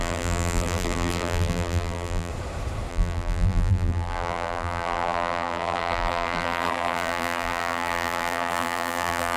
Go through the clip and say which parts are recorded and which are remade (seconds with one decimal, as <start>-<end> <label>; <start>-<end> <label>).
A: 0.0-2.3 remade; 2.3-2.9 recorded; 2.9-9.4 remade